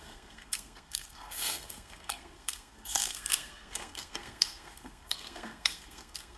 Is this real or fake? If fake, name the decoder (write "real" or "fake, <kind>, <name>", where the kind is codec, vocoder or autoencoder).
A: fake, codec, SNAC